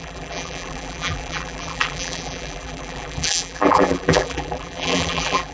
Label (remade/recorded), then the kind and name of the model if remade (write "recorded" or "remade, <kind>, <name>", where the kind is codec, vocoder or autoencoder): remade, vocoder, BigVGAN v2